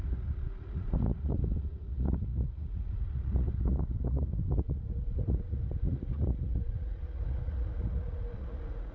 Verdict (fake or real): fake